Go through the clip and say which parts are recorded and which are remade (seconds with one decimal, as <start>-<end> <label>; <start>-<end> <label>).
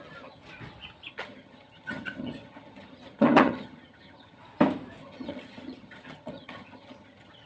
0.0-0.4 remade; 0.4-1.1 recorded; 1.1-4.4 remade; 4.4-5.0 recorded; 5.0-7.5 remade